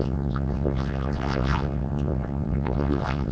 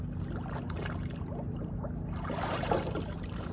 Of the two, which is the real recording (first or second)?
second